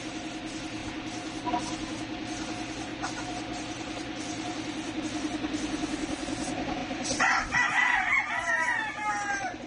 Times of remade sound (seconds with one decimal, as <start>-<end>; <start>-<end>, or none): 2.9-5.0; 6.8-9.1